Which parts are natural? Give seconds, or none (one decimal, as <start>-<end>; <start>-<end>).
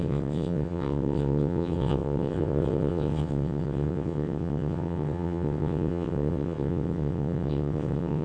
none